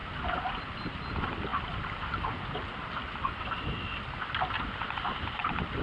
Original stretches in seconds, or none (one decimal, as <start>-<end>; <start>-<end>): 0.0-5.8